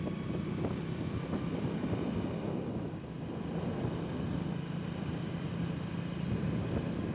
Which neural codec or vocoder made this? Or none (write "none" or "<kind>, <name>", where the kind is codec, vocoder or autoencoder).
none